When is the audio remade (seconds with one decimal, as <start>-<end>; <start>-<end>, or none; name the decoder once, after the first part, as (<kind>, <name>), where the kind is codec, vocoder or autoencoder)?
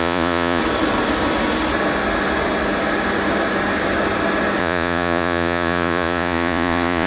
0.0-0.6 (vocoder, Vocos); 4.6-7.1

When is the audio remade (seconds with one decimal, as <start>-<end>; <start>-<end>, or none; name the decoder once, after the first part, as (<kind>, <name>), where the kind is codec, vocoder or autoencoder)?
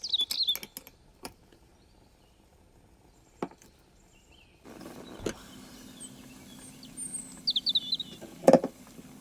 1.1-1.7 (vocoder, BigVGAN v2)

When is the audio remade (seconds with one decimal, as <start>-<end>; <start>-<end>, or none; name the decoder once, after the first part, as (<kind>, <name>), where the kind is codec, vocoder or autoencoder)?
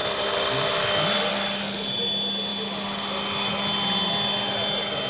none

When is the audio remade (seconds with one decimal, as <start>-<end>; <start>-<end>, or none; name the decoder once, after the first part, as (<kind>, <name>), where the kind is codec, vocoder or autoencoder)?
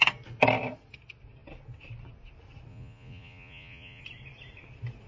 2.7-4.0 (vocoder, Vocos)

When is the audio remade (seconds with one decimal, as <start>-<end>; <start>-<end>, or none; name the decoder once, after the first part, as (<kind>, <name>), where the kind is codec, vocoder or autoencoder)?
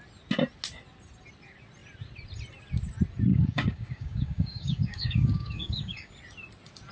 3.3-6.1 (codec, DAC)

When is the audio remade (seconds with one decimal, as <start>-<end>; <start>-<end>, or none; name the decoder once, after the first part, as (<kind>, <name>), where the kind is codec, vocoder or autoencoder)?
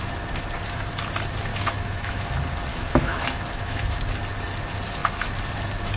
1.5-2.3 (autoencoder, DAC-VAE); 2.7-4.0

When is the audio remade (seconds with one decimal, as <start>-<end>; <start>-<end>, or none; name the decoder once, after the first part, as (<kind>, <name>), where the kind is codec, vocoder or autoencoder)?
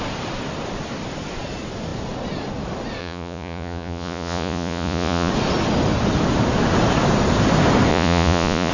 3.0-5.3 (vocoder, Vocos); 7.9-8.7